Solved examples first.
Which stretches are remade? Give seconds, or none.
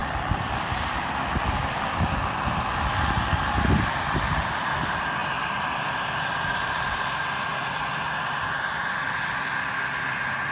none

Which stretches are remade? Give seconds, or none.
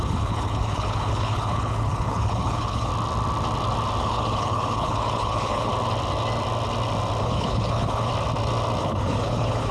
0.0-2.9 (codec, HILCodec); 4.0-5.7; 7.2-8.1; 8.8-9.7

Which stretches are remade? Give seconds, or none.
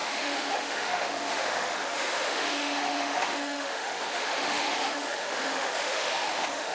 0.0-6.7 (autoencoder, DAC-VAE)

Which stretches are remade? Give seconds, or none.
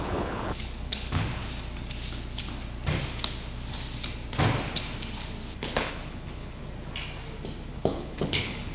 0.0-1.4 (codec, HILCodec); 5.6-6.6; 7.7-8.7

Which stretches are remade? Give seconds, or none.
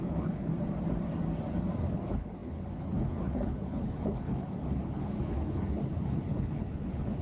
0.0-0.5 (codec, HILCodec); 1.8-7.2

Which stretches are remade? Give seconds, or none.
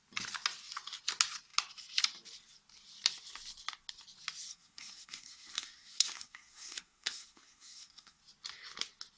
4.5-8.2 (codec, SNAC)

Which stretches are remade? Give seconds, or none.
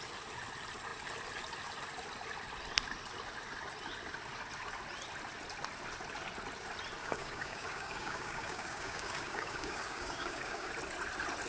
7.0-10.7 (codec, DAC)